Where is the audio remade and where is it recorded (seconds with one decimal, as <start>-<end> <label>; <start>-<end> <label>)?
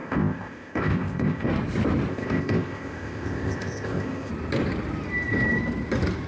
0.0-1.5 remade; 1.5-2.1 recorded; 2.1-4.3 remade; 4.3-6.3 recorded